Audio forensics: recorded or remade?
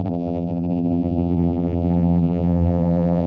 remade